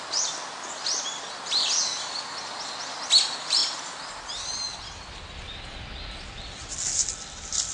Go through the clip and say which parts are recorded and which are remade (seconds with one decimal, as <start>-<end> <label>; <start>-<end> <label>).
0.0-7.7 recorded